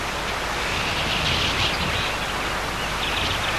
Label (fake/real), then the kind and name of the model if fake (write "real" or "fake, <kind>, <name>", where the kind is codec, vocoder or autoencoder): real